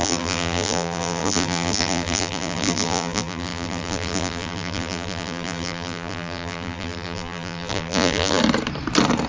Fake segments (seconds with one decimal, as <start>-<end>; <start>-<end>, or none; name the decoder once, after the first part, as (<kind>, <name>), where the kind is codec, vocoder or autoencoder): 0.0-8.4 (vocoder, BigVGAN v2)